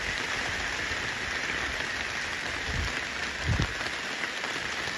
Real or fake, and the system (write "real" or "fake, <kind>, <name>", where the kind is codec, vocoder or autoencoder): real